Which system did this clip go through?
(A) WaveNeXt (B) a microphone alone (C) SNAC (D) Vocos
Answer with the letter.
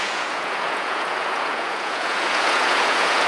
D